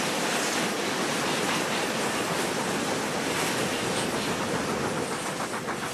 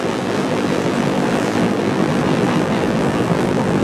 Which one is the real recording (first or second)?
first